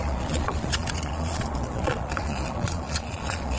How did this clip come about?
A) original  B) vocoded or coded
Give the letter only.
B